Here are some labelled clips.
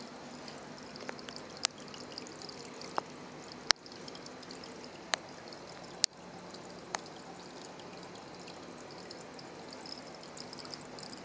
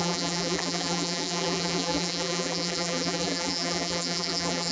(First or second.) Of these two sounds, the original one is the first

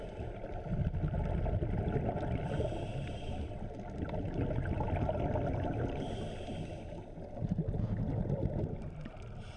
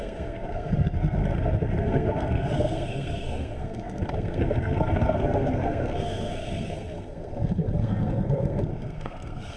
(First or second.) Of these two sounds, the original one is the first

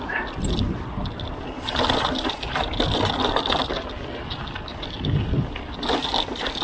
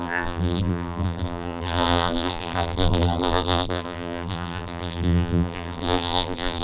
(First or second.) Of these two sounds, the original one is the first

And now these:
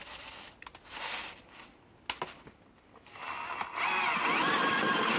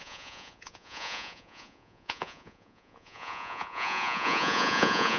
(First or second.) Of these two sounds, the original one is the first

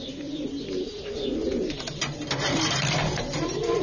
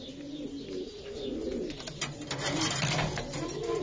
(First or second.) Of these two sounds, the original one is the second